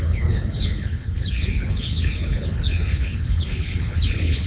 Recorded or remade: remade